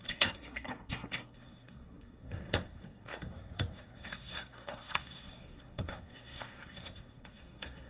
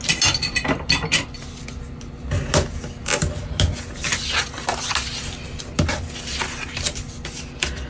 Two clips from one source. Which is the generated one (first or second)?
first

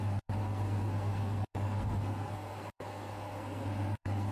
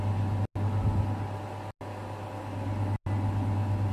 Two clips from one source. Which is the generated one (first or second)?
first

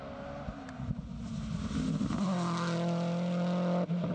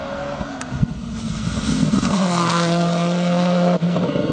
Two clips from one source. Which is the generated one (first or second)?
second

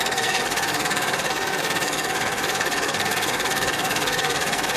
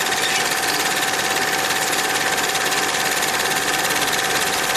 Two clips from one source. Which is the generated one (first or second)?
first